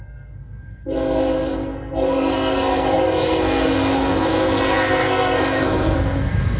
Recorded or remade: remade